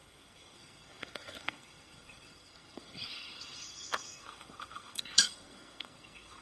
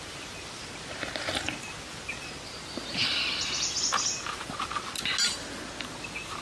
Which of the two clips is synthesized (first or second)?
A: first